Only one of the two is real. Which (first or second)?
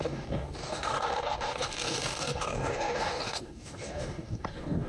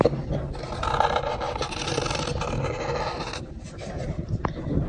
second